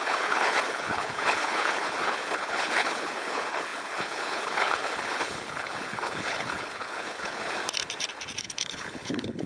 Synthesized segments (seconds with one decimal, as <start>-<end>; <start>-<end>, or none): 0.0-7.6; 8.4-9.5